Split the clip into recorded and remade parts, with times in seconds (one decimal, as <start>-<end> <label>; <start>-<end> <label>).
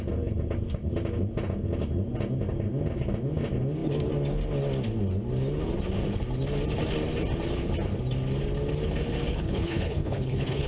0.0-9.3 recorded; 9.3-10.7 remade